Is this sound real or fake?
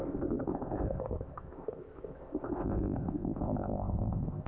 fake